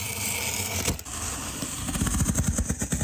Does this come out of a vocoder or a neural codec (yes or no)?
no